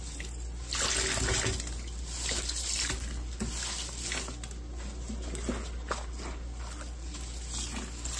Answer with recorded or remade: recorded